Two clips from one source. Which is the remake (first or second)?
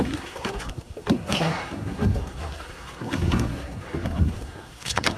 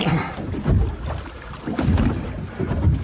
first